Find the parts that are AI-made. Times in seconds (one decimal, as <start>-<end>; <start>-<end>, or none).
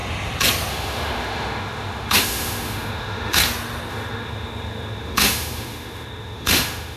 0.7-3.4; 3.9-7.0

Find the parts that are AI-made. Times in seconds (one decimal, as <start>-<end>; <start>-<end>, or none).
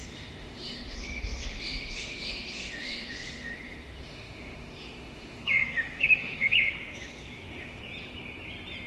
0.0-7.8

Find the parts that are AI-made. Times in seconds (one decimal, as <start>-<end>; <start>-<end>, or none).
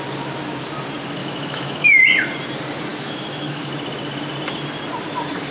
1.2-2.0; 2.9-3.7